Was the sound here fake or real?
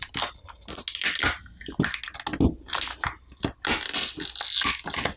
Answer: real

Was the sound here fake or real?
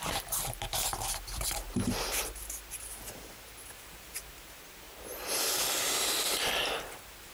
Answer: real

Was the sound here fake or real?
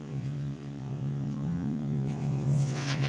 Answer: fake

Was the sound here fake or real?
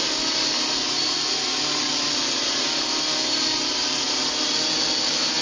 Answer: real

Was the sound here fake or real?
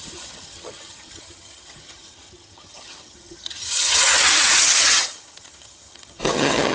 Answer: fake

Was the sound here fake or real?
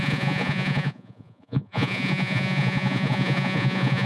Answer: fake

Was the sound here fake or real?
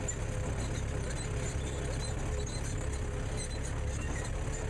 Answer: real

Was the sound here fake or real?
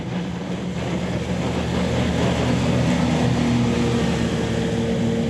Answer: real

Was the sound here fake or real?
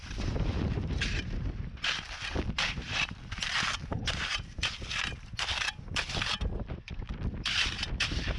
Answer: fake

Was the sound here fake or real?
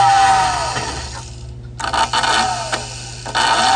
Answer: real